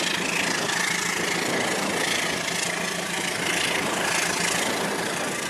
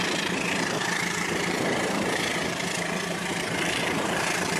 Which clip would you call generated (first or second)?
second